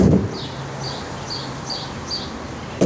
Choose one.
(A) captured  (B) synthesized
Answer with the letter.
A